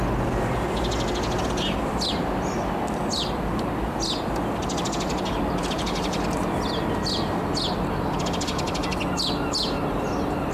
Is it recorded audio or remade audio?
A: recorded